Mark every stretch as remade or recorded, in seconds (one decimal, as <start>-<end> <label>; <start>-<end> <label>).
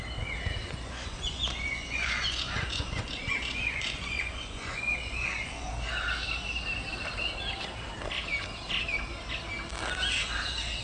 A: 0.0-0.6 recorded; 0.6-5.7 remade; 5.7-10.8 recorded